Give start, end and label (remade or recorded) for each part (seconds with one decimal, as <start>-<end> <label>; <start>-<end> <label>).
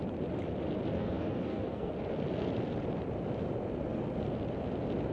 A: 0.0-1.0 recorded; 1.0-1.9 remade; 1.9-5.1 recorded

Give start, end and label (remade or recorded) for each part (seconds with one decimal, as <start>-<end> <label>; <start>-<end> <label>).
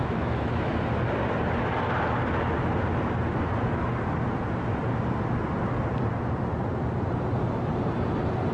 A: 0.0-0.7 remade; 0.7-8.5 recorded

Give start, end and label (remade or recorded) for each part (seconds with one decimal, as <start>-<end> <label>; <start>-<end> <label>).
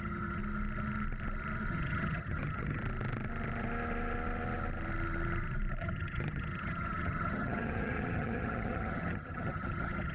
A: 0.0-0.4 remade; 0.4-1.7 recorded; 1.7-2.8 remade; 2.8-5.8 recorded; 5.8-10.1 remade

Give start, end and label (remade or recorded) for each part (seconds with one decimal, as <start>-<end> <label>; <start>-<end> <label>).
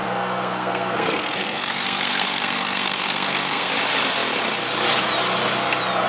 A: 0.0-3.7 remade; 3.7-6.1 recorded